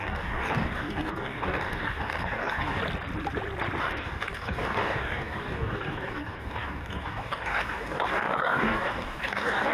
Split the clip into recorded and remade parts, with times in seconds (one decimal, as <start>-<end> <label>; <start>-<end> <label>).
0.0-2.8 remade; 2.8-3.8 recorded; 3.8-9.7 remade